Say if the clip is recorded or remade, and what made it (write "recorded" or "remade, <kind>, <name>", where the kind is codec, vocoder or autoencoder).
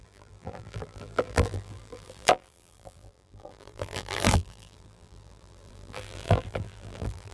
remade, vocoder, BigVGAN v2